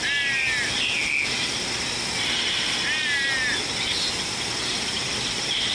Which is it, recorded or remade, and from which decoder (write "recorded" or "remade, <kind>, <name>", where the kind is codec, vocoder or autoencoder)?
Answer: recorded